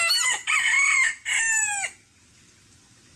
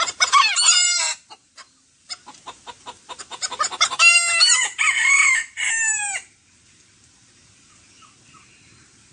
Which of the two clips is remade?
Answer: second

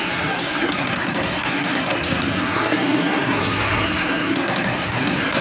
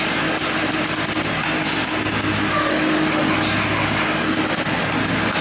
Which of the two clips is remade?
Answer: first